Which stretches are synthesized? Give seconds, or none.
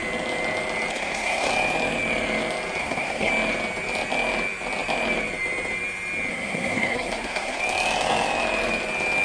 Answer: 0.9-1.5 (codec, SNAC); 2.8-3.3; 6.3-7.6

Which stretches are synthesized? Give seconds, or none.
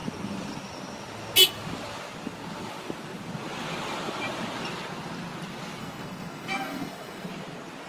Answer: 5.8-7.3 (codec, SNAC)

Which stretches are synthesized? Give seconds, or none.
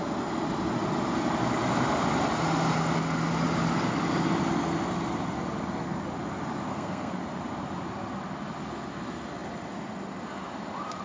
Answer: 6.7-7.2 (codec, SNAC)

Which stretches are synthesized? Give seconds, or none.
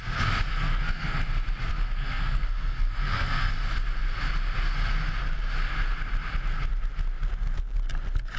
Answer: 0.5-1.2 (codec, SNAC); 1.7-3.5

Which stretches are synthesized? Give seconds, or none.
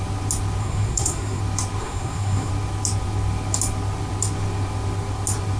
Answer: 0.6-1.4 (codec, SNAC); 1.8-2.5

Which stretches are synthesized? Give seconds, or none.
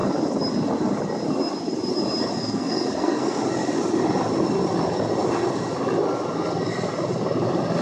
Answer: 2.4-3.4 (codec, SNAC)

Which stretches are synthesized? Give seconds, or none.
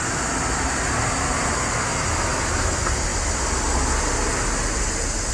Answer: none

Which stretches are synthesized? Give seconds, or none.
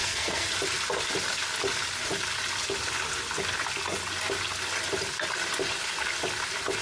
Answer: 0.0-0.5 (codec, SNAC)